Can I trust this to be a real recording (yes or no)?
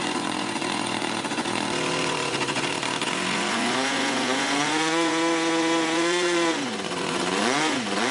no